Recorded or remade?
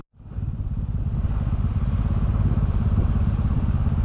recorded